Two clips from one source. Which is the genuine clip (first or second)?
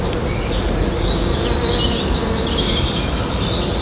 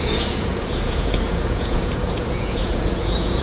first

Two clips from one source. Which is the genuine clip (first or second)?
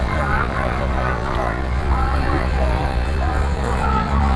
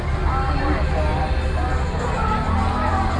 second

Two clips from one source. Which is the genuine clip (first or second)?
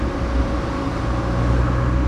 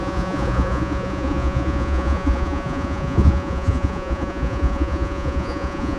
first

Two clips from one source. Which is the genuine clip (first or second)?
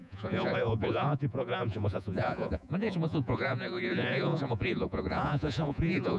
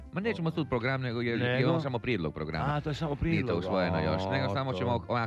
second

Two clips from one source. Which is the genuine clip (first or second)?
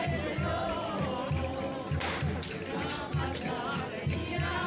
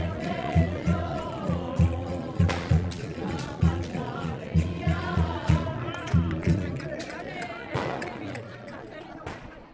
first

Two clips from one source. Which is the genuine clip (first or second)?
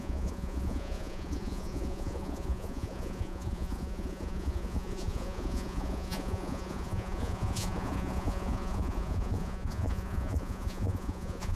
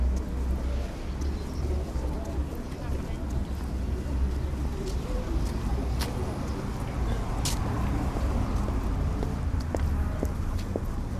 second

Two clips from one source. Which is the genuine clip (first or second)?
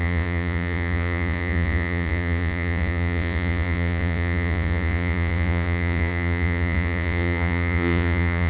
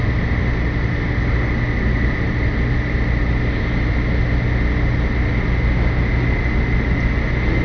second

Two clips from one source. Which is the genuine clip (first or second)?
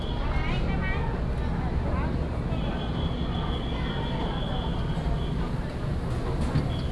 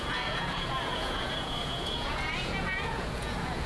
first